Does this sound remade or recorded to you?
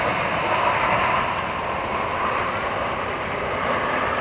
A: remade